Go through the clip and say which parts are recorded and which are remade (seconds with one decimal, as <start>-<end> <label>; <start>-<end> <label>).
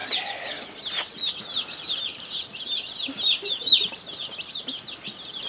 0.0-5.5 recorded